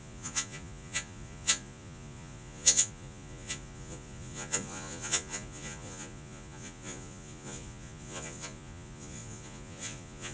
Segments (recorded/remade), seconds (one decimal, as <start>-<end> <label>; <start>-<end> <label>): 0.0-10.3 remade